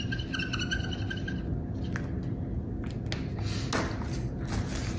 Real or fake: real